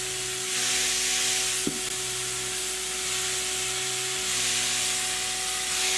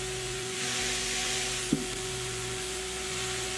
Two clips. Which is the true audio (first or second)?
first